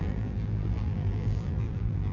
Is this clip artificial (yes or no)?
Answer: yes